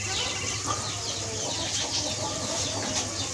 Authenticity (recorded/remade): recorded